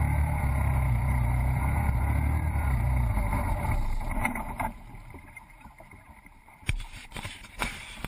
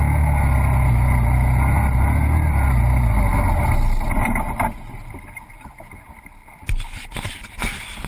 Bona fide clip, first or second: second